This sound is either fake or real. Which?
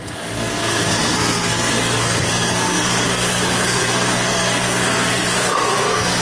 fake